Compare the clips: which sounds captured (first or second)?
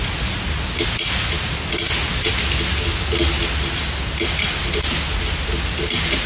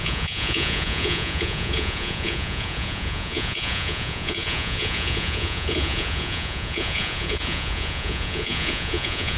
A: first